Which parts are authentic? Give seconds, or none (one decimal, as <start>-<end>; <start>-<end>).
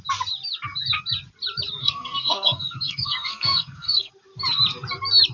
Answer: 0.0-1.8; 4.1-5.3